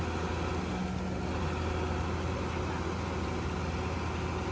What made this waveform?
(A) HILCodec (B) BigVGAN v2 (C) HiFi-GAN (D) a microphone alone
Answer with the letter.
D